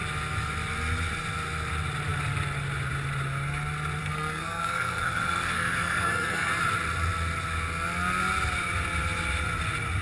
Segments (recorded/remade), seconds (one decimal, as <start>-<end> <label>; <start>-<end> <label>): 0.0-4.0 recorded; 4.0-6.5 remade; 6.5-10.0 recorded